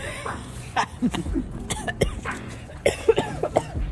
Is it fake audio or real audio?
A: fake